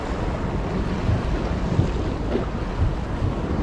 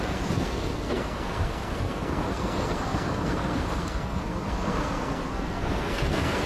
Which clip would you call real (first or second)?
first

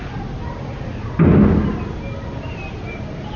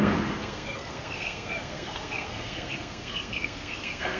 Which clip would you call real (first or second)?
first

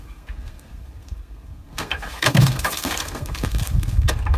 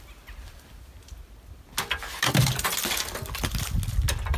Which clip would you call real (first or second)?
second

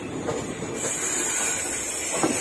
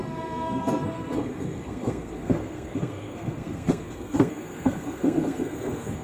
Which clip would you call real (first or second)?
first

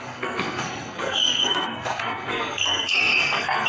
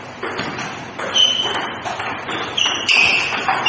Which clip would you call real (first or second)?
second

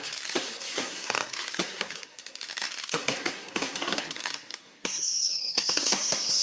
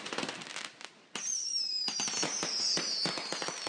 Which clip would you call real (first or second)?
second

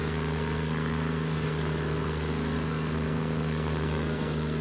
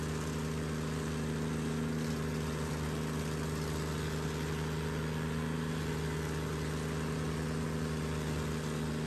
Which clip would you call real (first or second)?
second